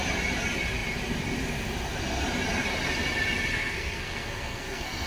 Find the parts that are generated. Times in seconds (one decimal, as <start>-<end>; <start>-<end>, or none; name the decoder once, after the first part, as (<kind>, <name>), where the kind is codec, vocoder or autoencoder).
3.5-5.1 (codec, SNAC)